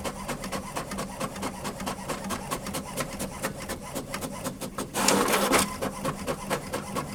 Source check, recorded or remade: recorded